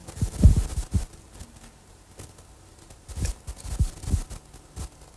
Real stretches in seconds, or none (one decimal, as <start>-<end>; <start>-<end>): 0.0-5.2